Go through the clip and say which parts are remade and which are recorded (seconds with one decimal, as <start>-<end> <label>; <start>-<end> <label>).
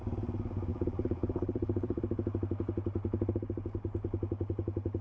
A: 0.0-0.7 recorded; 0.7-2.0 remade; 2.0-5.0 recorded